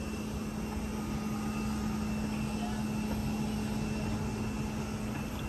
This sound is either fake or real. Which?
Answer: real